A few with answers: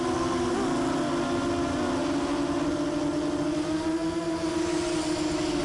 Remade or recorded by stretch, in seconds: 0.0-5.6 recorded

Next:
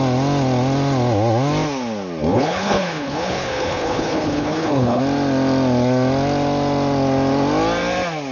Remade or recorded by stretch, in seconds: 0.0-2.3 recorded; 2.3-5.0 remade; 5.0-8.3 recorded

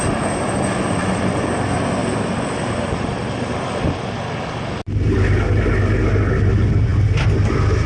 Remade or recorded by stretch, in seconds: 0.0-7.9 recorded

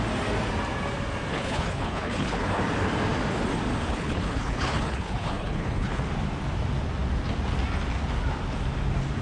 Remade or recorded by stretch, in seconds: 0.0-1.3 recorded; 1.3-2.6 remade; 2.6-3.9 recorded; 3.9-6.0 remade; 6.0-9.2 recorded